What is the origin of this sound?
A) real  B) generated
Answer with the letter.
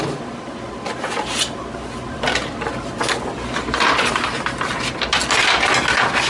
A